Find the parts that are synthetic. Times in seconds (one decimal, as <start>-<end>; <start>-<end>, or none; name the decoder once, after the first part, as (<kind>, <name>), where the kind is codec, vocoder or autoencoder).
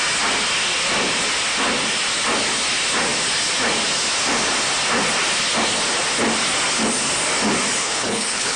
7.8-8.6 (codec, HILCodec)